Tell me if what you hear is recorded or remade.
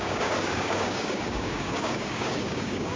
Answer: remade